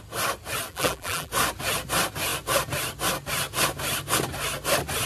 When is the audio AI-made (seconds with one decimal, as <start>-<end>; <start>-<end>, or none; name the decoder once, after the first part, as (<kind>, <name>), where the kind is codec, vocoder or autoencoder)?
0.7-1.3 (vocoder, BigVGAN v2)